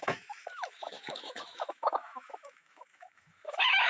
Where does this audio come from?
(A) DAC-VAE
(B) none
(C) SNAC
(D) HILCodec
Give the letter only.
A